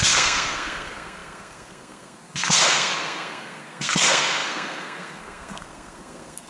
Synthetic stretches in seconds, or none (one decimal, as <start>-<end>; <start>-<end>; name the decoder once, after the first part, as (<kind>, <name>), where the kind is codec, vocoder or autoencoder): 0.0-6.5 (codec, SNAC)